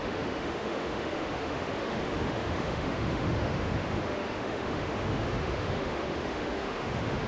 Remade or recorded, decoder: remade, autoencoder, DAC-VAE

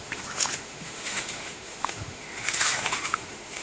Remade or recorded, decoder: remade, autoencoder, DAC-VAE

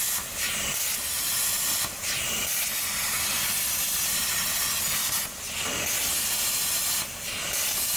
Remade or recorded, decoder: recorded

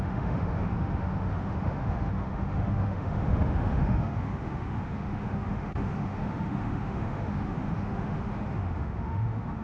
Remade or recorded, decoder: remade, autoencoder, DAC-VAE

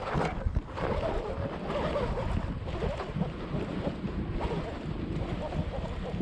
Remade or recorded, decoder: recorded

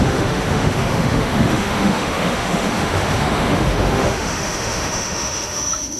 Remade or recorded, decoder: remade, autoencoder, DAC-VAE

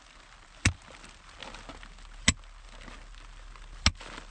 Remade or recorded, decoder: recorded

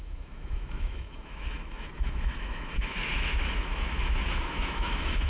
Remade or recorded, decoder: remade, autoencoder, DAC-VAE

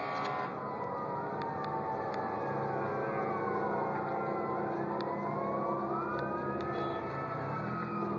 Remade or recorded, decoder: recorded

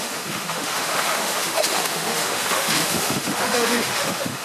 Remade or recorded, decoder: remade, autoencoder, DAC-VAE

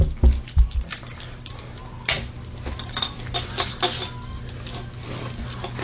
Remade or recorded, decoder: recorded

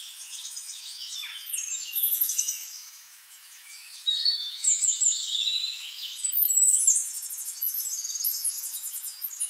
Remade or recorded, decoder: remade, autoencoder, DAC-VAE